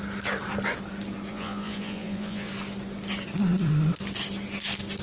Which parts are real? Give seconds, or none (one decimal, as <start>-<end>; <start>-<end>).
0.0-1.3; 2.5-5.0